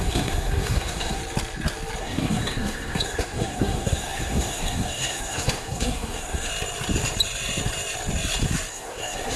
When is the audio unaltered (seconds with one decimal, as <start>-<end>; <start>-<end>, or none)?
1.2-2.0; 6.5-8.7